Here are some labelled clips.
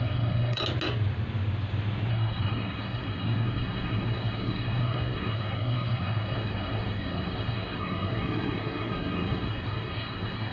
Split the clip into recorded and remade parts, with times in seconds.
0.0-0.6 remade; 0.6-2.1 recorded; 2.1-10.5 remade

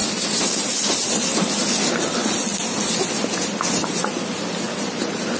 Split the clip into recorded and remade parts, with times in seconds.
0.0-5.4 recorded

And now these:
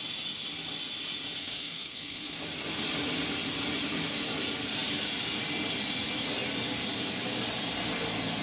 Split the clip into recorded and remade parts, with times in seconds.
0.0-1.4 recorded; 1.4-2.4 remade; 2.4-8.4 recorded

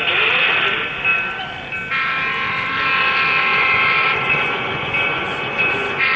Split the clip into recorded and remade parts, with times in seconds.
0.0-3.5 recorded; 3.5-6.2 remade

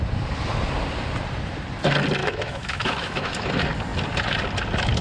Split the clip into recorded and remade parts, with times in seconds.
0.0-2.2 recorded; 2.2-3.5 remade; 3.5-5.0 recorded

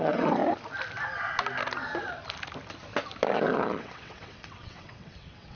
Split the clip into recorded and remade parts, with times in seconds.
0.0-0.4 remade; 0.4-3.8 recorded; 3.8-5.6 remade

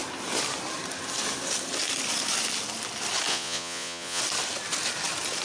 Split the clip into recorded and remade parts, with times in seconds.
0.0-3.3 recorded; 3.3-4.2 remade; 4.2-5.4 recorded